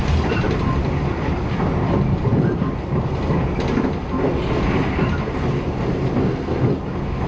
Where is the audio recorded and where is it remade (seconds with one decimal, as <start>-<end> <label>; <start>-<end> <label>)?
0.0-6.2 recorded; 6.2-6.7 remade; 6.7-7.3 recorded